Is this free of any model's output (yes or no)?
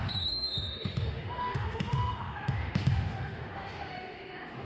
no